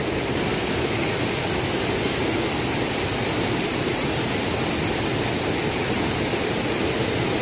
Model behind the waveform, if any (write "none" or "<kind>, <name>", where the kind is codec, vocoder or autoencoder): none